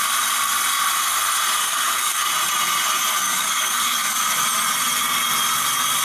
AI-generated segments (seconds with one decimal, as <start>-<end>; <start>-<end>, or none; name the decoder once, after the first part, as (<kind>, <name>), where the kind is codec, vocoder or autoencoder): 1.6-2.3 (codec, DAC); 3.1-4.2